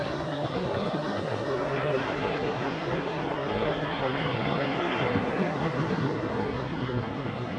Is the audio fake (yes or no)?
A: yes